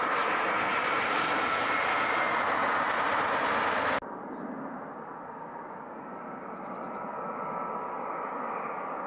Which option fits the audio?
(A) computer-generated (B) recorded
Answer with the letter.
B